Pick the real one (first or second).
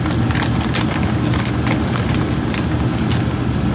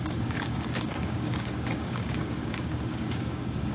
first